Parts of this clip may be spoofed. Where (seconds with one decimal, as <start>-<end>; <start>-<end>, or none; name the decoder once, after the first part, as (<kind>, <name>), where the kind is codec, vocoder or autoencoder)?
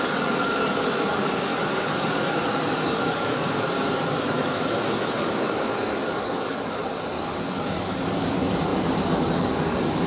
0.0-10.1 (codec, DAC)